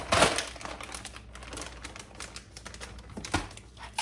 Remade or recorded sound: recorded